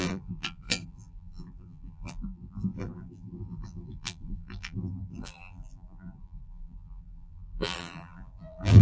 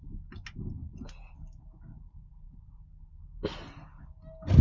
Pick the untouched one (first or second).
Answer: second